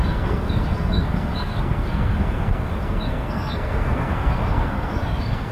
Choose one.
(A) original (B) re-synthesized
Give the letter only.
B